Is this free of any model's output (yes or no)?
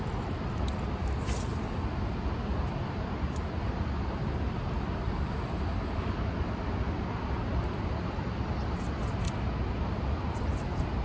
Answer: yes